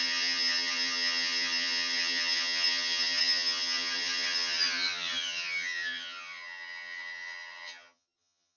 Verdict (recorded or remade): remade